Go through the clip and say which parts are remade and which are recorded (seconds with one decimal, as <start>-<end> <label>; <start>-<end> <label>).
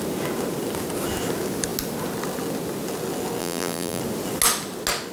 0.0-3.4 recorded; 3.4-4.0 remade; 4.0-5.1 recorded